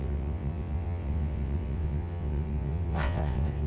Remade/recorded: remade